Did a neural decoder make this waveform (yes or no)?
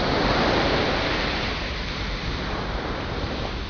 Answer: no